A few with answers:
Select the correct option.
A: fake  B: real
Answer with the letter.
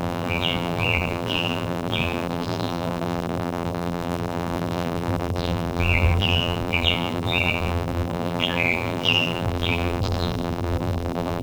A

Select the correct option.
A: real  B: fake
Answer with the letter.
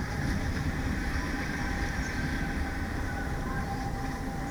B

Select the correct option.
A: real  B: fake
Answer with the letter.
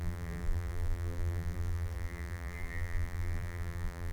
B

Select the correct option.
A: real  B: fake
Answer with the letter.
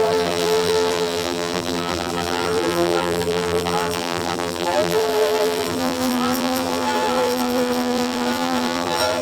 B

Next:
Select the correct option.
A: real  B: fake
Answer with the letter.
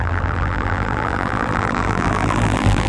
B